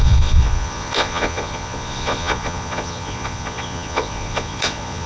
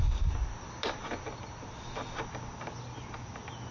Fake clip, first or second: first